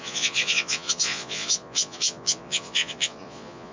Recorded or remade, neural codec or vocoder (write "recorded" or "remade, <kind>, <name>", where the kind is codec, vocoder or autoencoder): remade, vocoder, Vocos